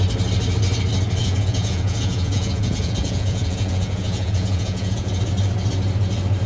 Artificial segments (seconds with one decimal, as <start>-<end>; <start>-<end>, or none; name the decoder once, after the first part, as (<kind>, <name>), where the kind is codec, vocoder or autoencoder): 1.2-5.1 (vocoder, Vocos)